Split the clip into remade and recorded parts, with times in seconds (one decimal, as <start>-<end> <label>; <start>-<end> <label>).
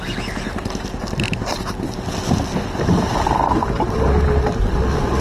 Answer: 0.0-5.2 recorded